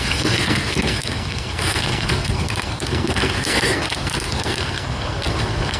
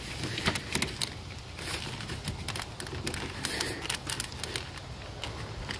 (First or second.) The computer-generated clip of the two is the first